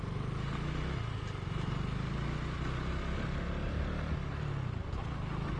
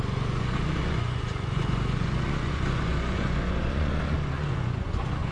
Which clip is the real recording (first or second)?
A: first